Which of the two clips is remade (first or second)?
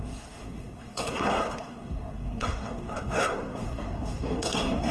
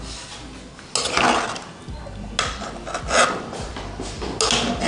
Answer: first